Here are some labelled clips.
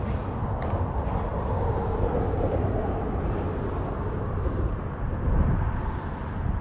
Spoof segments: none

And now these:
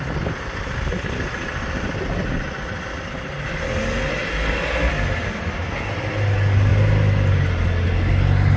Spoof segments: none

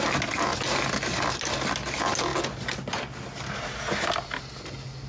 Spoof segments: none

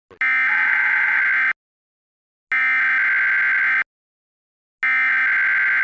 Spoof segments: 0.5-1.2 (vocoder, WaveNeXt)

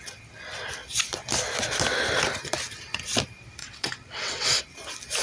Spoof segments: 3.6-4.6 (vocoder, WaveNeXt)

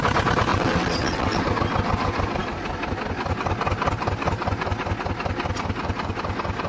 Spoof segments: 0.5-1.4 (vocoder, WaveNeXt)

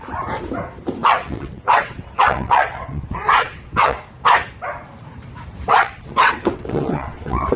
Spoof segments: 1.0-4.0 (vocoder, WaveNeXt); 5.7-7.6